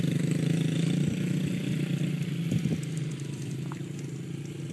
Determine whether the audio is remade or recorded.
recorded